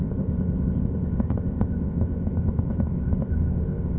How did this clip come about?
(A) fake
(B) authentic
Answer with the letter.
A